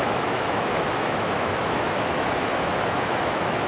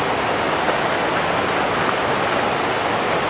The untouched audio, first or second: second